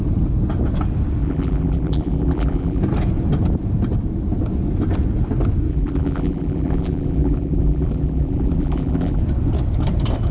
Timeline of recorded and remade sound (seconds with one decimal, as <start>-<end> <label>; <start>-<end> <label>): 0.0-1.2 recorded; 1.2-2.8 remade; 2.8-5.7 recorded; 5.7-9.2 remade; 9.2-10.3 recorded